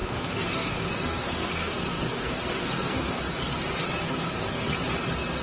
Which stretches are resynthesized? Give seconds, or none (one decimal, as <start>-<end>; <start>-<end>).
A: 0.0-3.2; 4.0-4.7